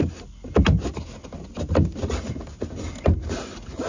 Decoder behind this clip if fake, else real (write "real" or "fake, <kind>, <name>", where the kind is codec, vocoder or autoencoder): real